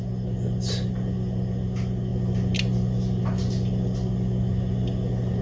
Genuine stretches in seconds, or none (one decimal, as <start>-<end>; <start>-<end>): 0.0-5.4